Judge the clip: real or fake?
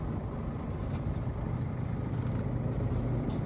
real